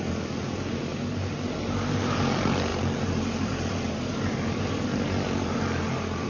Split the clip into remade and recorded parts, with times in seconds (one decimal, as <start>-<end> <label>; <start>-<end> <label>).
0.0-0.9 recorded; 0.9-2.2 remade; 2.2-2.7 recorded; 2.7-3.7 remade; 3.7-6.3 recorded